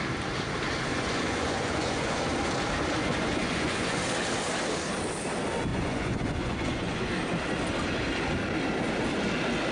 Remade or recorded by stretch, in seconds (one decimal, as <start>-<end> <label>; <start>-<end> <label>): 0.0-0.9 recorded; 0.9-2.2 remade; 2.2-3.0 recorded; 3.0-4.0 remade; 4.0-5.7 recorded; 5.7-7.1 remade; 7.1-9.7 recorded